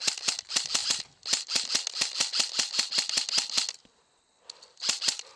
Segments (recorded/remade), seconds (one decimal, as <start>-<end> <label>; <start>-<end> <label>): 0.0-5.4 recorded